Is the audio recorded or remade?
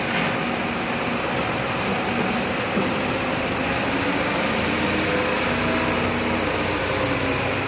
recorded